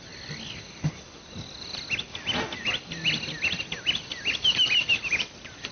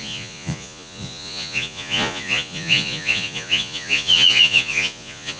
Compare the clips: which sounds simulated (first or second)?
second